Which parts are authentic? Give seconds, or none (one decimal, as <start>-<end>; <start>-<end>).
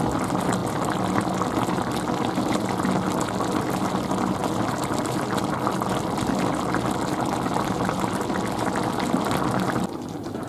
0.0-10.5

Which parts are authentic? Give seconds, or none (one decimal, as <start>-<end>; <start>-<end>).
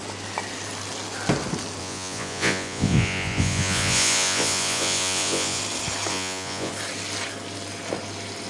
0.0-1.8; 5.6-6.1; 6.7-8.5